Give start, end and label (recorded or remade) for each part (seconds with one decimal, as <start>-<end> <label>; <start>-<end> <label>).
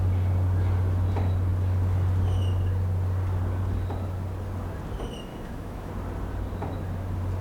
0.0-5.3 recorded; 5.3-5.9 remade; 5.9-7.4 recorded